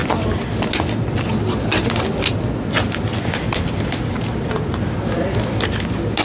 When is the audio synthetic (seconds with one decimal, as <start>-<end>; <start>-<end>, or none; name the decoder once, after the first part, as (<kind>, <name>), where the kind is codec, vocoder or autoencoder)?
none